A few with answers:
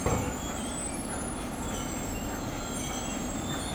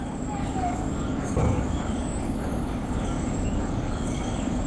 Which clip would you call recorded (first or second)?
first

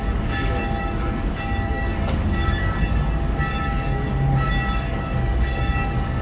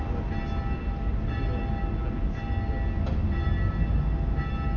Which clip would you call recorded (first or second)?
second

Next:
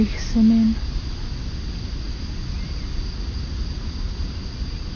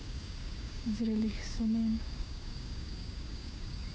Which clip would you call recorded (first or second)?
first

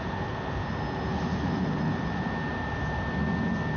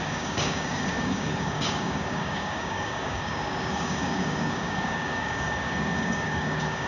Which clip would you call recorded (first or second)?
first